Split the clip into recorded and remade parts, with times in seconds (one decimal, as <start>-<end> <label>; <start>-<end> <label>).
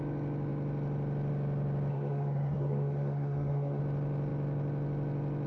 0.0-1.9 recorded; 1.9-3.8 remade; 3.8-5.5 recorded